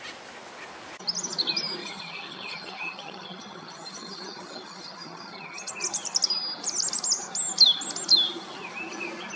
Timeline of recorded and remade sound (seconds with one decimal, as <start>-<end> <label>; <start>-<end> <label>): 0.0-1.8 recorded; 1.8-5.7 remade; 5.7-9.4 recorded